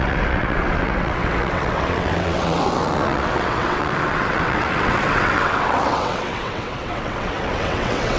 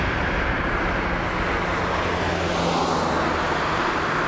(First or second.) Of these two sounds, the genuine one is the second